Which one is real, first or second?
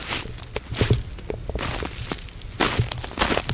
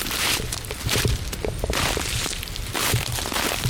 first